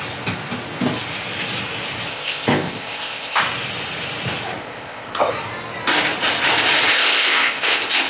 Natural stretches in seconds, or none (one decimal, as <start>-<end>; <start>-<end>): 0.0-2.1; 3.4-4.6; 5.3-6.9

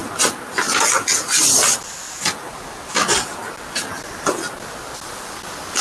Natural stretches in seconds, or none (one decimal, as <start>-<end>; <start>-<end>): 0.0-5.8

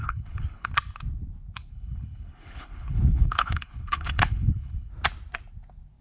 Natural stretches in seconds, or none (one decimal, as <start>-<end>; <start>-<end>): 0.7-1.7; 4.9-6.0

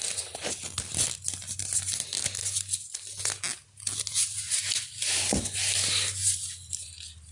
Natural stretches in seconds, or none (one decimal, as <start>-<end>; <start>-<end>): 0.0-7.3

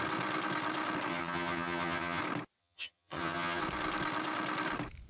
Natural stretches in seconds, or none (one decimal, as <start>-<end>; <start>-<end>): 0.0-1.1; 2.2-2.6; 3.6-5.1

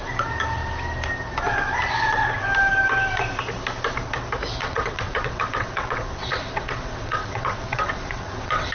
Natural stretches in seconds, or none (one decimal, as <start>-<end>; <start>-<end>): 0.0-4.6